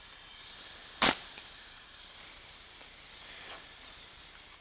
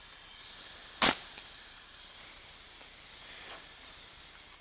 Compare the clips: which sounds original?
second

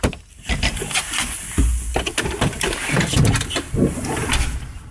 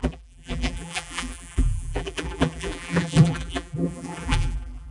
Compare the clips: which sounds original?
first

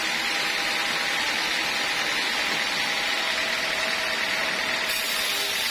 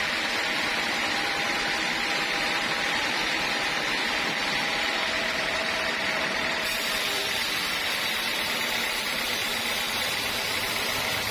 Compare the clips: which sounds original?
first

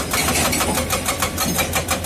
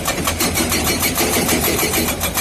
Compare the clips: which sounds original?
first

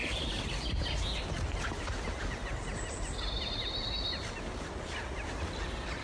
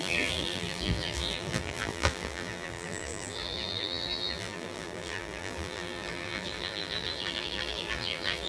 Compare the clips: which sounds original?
first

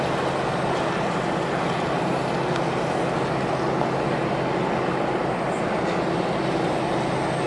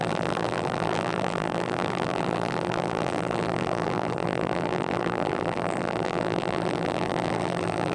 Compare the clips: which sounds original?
first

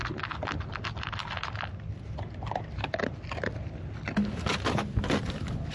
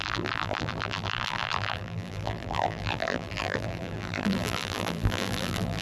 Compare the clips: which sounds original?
first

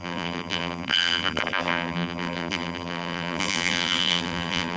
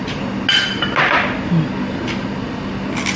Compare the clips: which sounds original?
second